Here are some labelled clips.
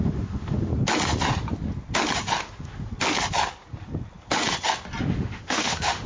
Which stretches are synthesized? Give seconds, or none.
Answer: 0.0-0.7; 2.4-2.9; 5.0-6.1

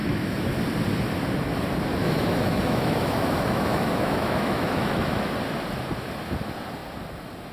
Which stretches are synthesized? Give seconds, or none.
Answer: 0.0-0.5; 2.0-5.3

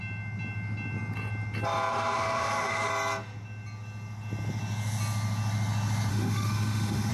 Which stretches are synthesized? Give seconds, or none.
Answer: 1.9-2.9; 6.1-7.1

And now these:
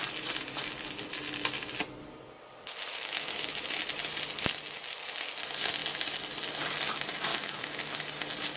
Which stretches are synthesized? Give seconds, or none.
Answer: 2.9-3.7; 7.3-8.0